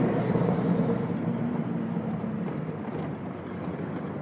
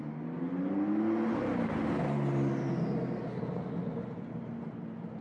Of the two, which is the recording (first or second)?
second